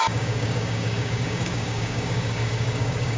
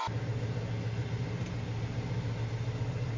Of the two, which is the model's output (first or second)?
first